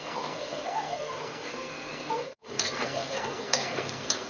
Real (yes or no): no